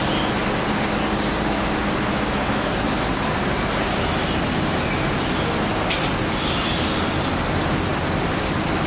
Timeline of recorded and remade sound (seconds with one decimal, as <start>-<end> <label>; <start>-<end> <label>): 0.0-8.9 recorded